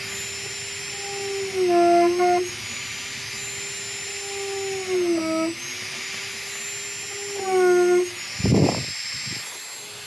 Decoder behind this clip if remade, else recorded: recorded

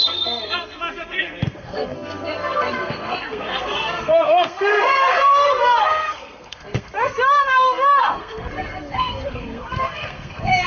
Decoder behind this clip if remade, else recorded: remade, codec, SNAC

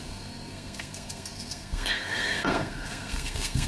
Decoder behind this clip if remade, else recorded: remade, codec, SNAC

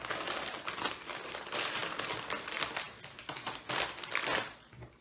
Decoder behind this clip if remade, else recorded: recorded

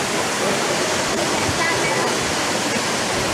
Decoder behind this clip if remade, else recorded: recorded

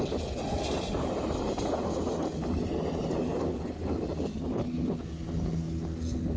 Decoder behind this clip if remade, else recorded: recorded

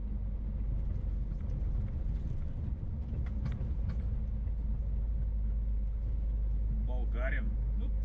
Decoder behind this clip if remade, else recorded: recorded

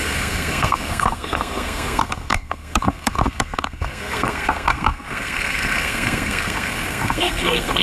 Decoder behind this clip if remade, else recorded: remade, codec, SNAC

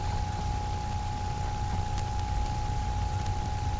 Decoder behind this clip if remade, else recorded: recorded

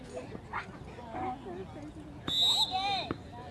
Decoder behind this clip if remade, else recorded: recorded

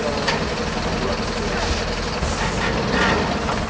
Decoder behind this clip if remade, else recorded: recorded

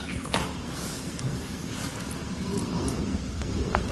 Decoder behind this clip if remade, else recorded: remade, codec, SNAC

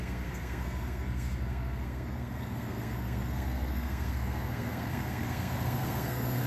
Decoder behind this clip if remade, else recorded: remade, codec, SNAC